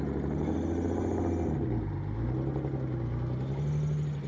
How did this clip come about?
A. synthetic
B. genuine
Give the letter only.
B